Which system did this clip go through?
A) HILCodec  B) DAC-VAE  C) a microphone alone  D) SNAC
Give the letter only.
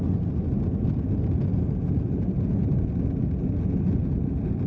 C